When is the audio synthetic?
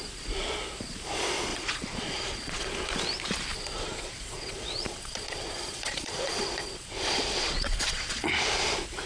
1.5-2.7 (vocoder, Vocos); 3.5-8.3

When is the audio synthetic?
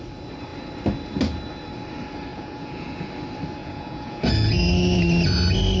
2.3-3.1 (vocoder, Vocos); 3.6-4.6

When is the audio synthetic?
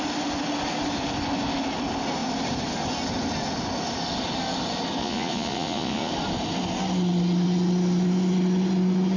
5.0-6.1 (vocoder, Vocos)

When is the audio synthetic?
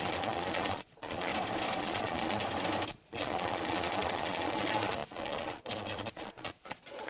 0.0-1.3 (vocoder, Vocos); 1.8-2.4; 2.9-7.1